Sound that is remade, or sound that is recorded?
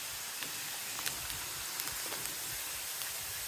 recorded